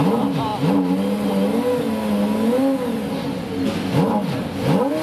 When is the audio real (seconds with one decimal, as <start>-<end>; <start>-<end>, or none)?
0.0-5.0